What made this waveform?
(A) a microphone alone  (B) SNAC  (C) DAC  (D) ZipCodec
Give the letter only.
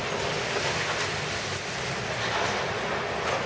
A